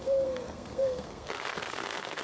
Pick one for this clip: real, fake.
fake